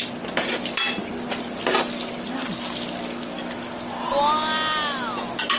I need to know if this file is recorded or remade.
recorded